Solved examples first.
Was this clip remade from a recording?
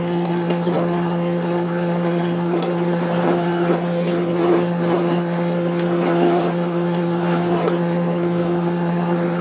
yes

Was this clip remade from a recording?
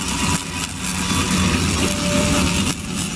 no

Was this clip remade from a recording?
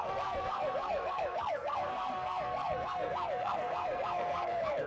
yes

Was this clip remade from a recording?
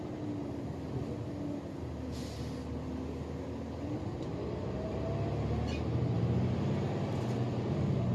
no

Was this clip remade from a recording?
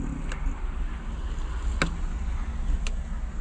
no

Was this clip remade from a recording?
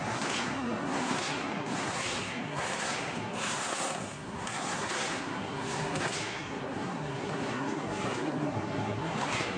yes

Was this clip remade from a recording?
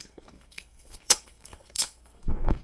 yes